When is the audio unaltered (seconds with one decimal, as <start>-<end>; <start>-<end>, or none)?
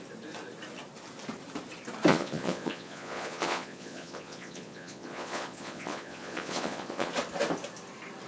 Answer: 0.0-2.1; 7.1-8.3